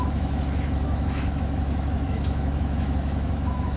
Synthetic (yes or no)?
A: yes